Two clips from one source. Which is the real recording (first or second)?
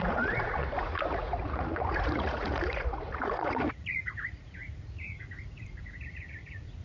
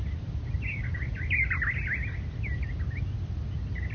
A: second